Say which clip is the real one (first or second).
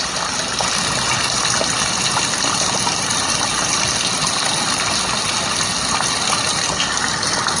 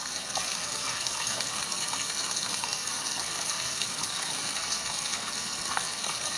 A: first